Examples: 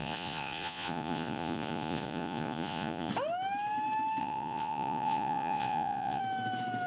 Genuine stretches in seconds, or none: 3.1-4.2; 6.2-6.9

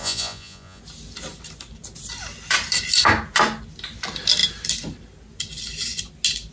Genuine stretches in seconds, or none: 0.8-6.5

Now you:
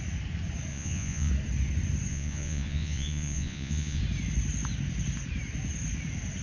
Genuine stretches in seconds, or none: 0.0-0.7; 1.3-2.1; 4.0-6.4